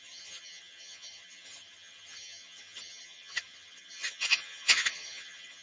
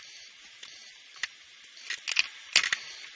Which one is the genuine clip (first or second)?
second